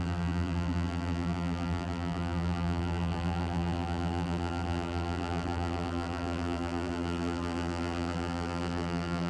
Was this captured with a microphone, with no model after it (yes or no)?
no